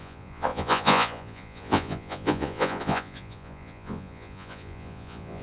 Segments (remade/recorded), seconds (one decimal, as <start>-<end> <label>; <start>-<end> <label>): 0.0-5.4 remade